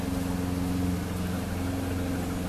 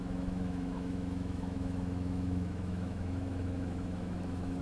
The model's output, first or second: second